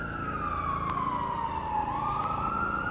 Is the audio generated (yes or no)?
no